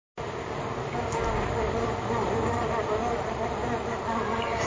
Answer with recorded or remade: recorded